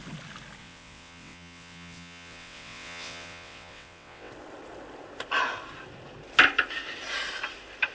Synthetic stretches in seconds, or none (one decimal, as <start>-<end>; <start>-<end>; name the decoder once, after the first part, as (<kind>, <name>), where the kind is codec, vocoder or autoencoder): 0.6-4.3 (vocoder, WaveNeXt)